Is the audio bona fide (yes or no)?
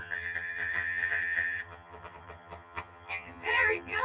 no